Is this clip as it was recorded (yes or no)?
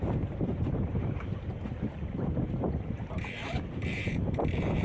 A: no